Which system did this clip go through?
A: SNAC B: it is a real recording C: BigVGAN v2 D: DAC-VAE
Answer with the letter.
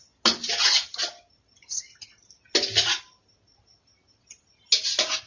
B